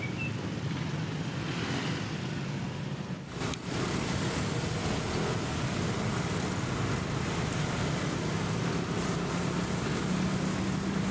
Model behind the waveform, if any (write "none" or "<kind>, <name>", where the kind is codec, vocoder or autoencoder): none